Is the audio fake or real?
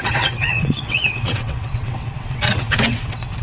fake